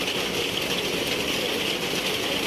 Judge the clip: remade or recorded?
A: recorded